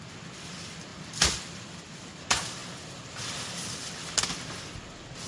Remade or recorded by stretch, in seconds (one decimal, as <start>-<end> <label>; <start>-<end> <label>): 0.0-0.9 recorded; 0.9-1.8 remade; 1.8-5.3 recorded

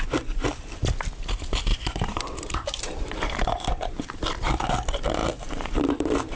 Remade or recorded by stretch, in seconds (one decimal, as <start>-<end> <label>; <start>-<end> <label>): 0.0-1.7 recorded; 1.7-4.5 remade; 4.5-5.2 recorded; 5.2-6.4 remade

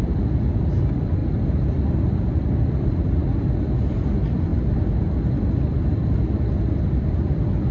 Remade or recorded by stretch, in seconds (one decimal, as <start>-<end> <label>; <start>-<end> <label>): 0.0-1.2 remade; 1.2-2.0 recorded; 2.0-3.2 remade; 3.2-3.8 recorded; 3.8-7.7 remade

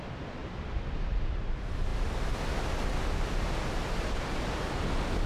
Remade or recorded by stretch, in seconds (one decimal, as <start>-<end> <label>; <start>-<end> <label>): 0.0-0.4 recorded; 0.4-0.9 remade; 0.9-5.3 recorded

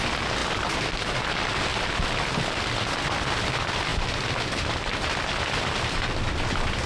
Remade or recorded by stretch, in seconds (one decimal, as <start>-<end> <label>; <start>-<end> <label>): 0.0-0.4 recorded; 0.4-1.2 remade; 1.2-6.9 recorded

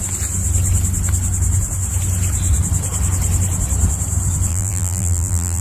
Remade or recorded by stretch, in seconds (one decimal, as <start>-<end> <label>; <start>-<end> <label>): 0.0-4.5 recorded; 4.5-5.6 remade

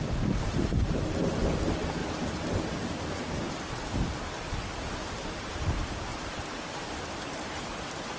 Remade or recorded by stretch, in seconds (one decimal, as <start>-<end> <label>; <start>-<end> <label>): 0.0-1.3 recorded; 1.3-2.0 remade; 2.0-5.6 recorded; 5.6-6.1 remade; 6.1-6.8 recorded; 6.8-8.2 remade

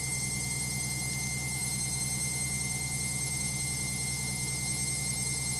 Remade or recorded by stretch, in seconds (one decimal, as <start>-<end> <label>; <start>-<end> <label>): 0.0-5.6 recorded